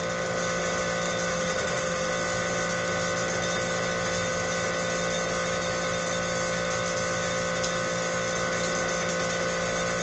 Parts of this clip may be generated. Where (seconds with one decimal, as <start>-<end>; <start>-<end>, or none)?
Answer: 1.3-2.1